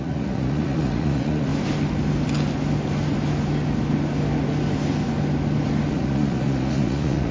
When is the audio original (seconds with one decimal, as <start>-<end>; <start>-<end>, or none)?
1.5-5.9